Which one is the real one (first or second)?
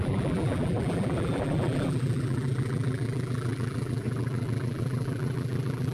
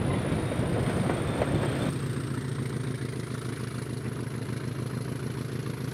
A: second